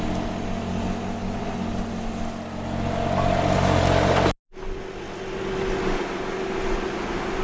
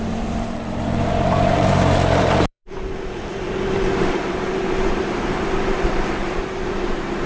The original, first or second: first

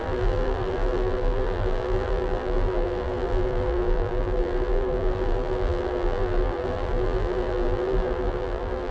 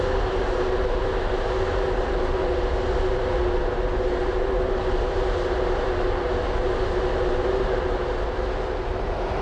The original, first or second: second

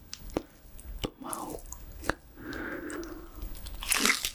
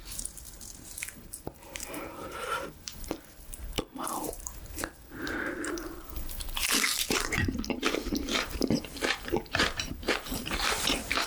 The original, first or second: first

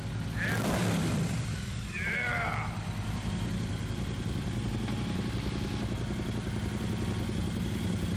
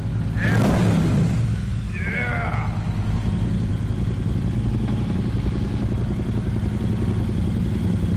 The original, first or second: second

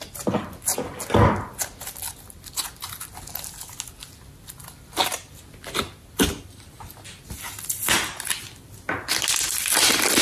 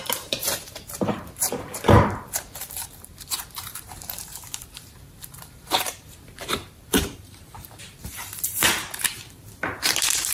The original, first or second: first